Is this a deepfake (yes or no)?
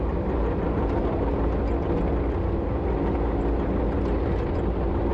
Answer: no